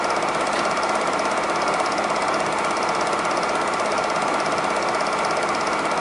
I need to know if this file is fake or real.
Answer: real